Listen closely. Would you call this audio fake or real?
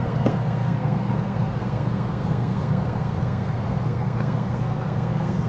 fake